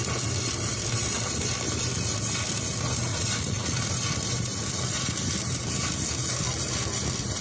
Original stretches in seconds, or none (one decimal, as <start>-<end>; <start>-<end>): 0.0-3.1; 3.9-7.4